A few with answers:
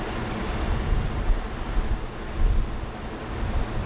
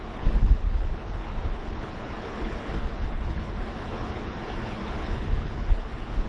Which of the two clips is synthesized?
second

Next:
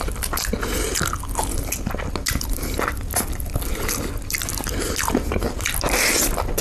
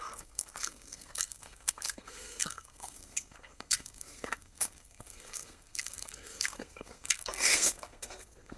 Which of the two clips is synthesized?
second